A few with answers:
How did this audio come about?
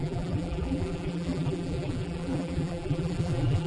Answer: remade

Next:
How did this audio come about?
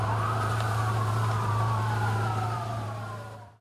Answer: remade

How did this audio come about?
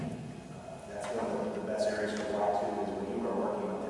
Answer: recorded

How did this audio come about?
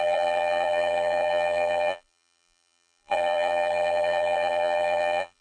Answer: remade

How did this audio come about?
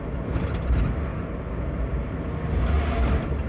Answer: recorded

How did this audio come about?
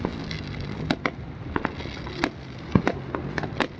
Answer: recorded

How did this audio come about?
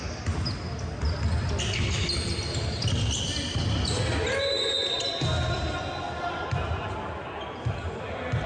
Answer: recorded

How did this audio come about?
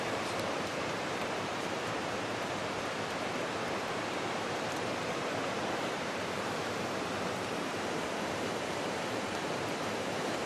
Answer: remade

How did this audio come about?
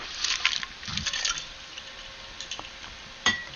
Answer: remade